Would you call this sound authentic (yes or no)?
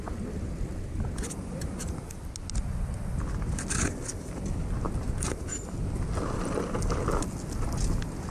yes